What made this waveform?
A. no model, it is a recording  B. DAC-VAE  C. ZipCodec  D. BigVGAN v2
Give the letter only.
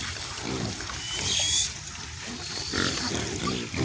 A